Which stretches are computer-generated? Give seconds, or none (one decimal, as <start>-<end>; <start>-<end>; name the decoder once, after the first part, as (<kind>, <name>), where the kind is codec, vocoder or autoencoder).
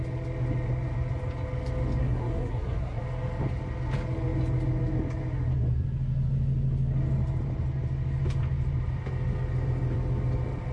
2.0-3.0 (codec, SNAC)